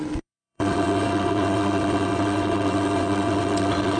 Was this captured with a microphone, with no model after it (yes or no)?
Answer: no